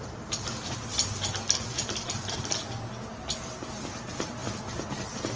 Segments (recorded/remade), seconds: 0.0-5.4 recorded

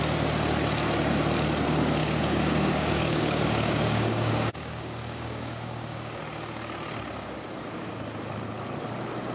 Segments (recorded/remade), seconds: 0.0-2.0 recorded; 2.0-6.2 remade; 6.2-9.3 recorded

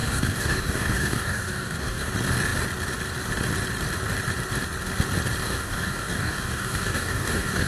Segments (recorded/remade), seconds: 0.0-2.1 remade; 2.1-5.4 recorded; 5.4-7.7 remade